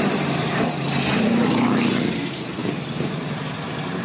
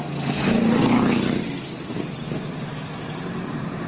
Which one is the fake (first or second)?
first